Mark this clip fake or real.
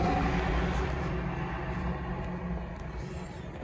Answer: real